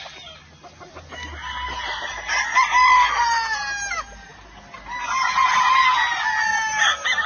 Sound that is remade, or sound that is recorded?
recorded